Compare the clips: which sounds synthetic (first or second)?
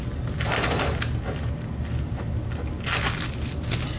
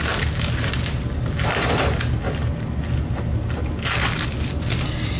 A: second